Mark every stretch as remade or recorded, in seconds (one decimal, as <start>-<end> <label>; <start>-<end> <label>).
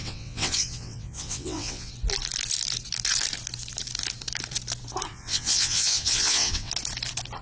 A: 0.0-1.9 remade; 1.9-5.1 recorded; 5.1-6.7 remade; 6.7-7.4 recorded